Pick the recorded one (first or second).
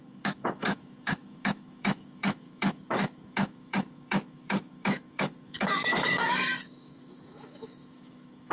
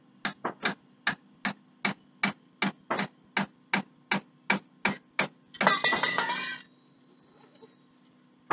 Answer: second